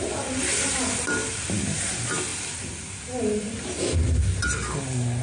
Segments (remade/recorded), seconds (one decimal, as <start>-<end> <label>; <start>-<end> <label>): 0.0-5.2 recorded